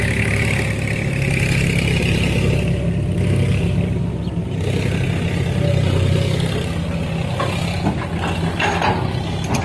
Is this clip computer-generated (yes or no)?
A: no